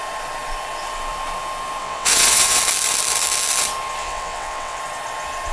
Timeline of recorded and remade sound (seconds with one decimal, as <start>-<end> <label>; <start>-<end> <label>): 0.0-1.8 recorded; 1.8-2.6 remade; 2.6-4.0 recorded; 4.0-4.8 remade; 4.8-5.5 recorded